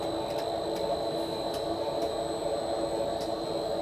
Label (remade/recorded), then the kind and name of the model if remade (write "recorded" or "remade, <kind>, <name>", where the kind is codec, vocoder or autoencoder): recorded